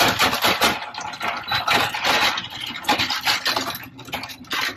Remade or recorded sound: recorded